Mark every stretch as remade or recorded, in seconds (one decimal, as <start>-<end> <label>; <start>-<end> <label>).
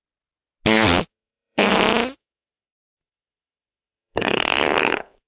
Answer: 0.0-1.1 recorded; 1.1-1.8 remade; 1.8-2.2 recorded; 2.2-5.3 remade